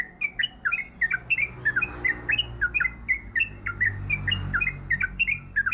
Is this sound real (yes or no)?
yes